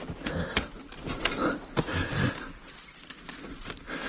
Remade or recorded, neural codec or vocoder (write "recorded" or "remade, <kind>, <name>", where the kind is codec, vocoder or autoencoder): recorded